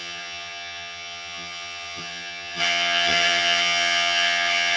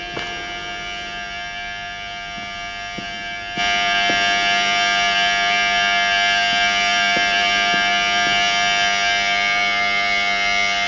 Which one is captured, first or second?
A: second